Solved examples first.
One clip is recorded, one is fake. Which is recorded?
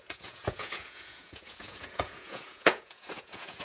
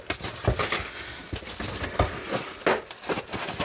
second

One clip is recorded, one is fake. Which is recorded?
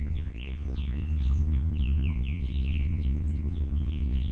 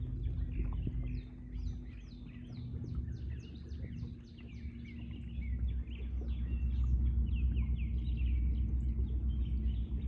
second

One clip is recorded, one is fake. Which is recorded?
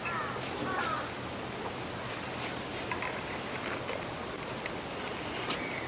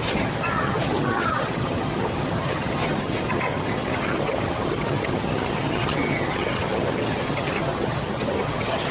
first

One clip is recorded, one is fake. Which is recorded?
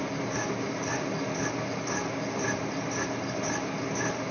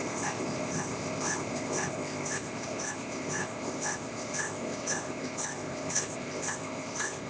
first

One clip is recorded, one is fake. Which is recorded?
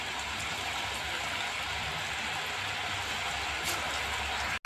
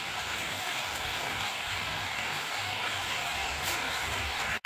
first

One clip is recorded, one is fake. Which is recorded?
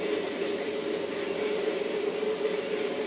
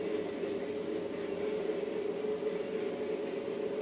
second